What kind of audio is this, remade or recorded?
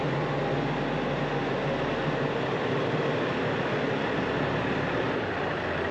recorded